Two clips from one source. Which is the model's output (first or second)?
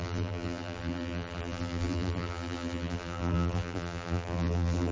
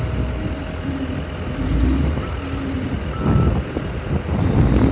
first